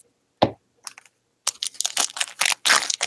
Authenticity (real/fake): real